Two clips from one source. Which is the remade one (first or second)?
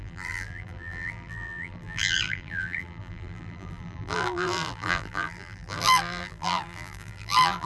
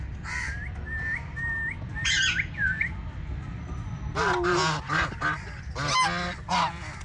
first